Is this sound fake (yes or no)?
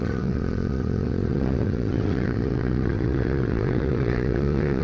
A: yes